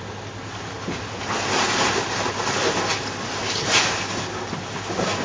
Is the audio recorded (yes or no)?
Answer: yes